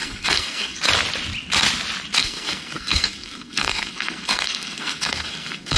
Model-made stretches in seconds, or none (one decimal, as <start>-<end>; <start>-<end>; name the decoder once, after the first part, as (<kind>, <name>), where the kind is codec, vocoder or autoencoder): 0.0-0.8 (codec, SNAC); 2.2-5.8